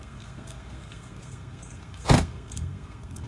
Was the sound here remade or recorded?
remade